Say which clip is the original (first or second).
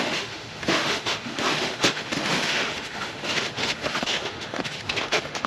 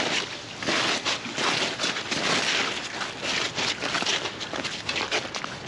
second